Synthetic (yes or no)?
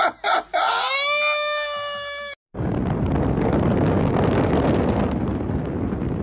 no